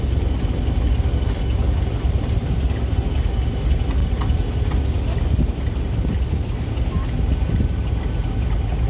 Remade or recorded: recorded